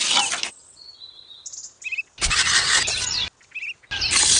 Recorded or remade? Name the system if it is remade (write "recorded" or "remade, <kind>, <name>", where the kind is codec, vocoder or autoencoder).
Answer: recorded